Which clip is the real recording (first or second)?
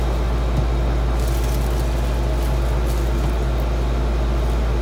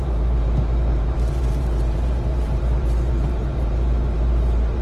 first